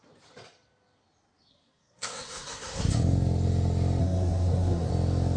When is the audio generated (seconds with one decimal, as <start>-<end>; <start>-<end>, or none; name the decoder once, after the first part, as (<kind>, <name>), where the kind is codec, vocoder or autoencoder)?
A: 1.5-2.8 (codec, SNAC); 4.0-4.9